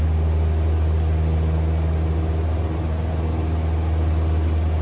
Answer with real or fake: real